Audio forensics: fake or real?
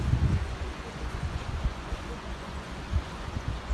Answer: fake